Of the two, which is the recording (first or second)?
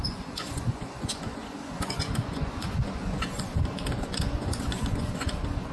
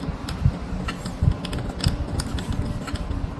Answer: second